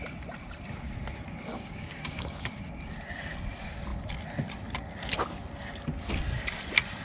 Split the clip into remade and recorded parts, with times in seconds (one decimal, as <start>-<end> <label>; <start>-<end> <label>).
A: 0.0-1.5 recorded; 1.5-2.6 remade; 2.6-7.0 recorded